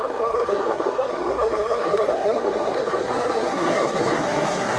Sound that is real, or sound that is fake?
fake